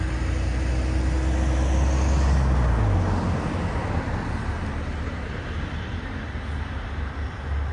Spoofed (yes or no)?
no